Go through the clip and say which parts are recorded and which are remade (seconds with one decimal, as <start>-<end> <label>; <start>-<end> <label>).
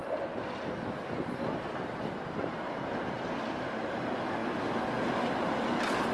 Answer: 0.0-3.7 remade; 3.7-6.1 recorded